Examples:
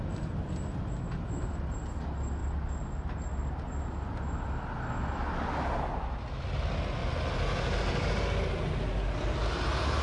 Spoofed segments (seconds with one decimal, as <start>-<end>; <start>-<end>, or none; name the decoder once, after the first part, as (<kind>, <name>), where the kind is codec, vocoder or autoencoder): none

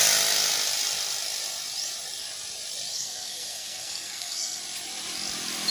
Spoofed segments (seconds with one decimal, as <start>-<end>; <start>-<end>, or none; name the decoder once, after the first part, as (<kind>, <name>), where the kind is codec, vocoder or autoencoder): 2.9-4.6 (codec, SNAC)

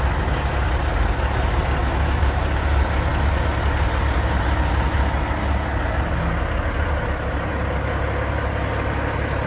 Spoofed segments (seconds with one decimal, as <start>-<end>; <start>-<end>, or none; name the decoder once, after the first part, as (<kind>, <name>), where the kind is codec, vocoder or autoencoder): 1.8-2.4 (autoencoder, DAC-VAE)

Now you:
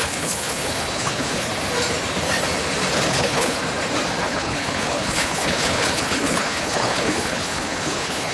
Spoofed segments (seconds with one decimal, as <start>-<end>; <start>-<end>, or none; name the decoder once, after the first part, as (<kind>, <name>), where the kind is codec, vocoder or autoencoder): 0.0-1.5 (codec, HILCodec); 3.1-3.6; 4.2-8.3

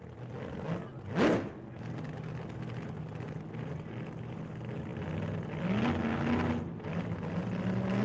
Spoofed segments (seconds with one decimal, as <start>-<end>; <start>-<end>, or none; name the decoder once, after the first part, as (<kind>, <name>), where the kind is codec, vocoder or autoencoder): none

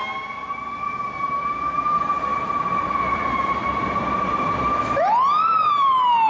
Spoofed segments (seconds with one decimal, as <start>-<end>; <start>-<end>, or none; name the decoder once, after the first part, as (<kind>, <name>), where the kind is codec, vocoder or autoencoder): 2.3-6.3 (vocoder, BigVGAN v2)

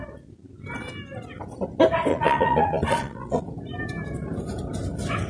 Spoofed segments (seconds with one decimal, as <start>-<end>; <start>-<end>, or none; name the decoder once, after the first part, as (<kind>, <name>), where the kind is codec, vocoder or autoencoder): 2.1-3.4 (vocoder, Vocos)

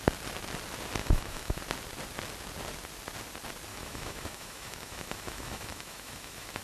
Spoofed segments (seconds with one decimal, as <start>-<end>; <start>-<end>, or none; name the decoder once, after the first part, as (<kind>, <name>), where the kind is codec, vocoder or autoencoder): 1.0-1.6 (autoencoder, DAC-VAE); 3.7-6.6